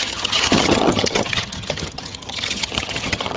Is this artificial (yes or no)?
yes